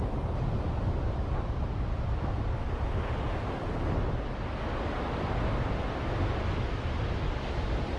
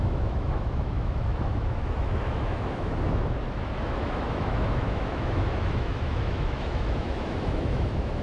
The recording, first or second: first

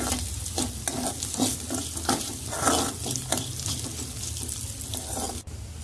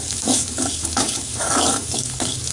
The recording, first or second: first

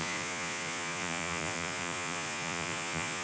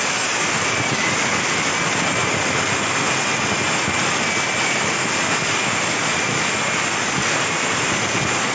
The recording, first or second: second